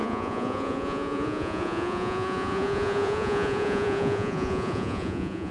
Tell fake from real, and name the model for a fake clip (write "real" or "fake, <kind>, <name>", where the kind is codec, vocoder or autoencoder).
fake, vocoder, Vocos